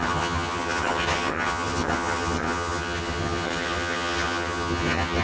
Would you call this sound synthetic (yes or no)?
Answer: yes